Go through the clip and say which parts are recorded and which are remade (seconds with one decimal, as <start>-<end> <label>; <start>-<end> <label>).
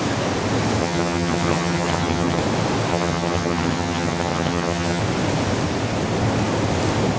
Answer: 0.0-0.8 recorded; 0.8-2.4 remade; 2.4-2.9 recorded; 2.9-5.0 remade; 5.0-7.2 recorded